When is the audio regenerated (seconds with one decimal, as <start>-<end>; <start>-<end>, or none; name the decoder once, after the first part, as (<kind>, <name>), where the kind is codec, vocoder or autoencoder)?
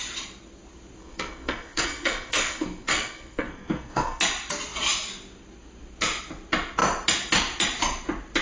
1.0-4.2 (codec, SNAC)